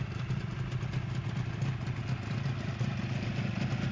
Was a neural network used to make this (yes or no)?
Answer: no